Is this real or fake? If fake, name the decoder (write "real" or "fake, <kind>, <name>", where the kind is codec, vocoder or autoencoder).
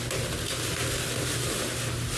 real